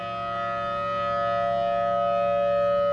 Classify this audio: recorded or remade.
recorded